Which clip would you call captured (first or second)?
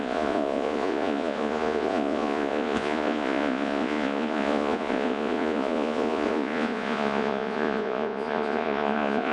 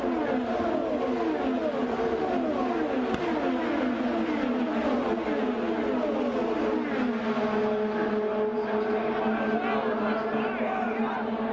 second